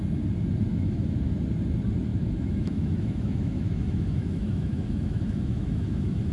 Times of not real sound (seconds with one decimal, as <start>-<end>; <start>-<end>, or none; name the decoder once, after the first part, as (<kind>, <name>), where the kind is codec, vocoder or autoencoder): 0.7-1.3 (autoencoder, DAC-VAE); 2.1-6.3